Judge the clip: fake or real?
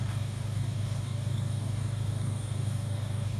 fake